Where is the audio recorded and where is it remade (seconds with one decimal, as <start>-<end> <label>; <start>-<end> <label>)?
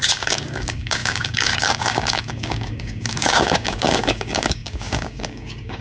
0.0-5.8 remade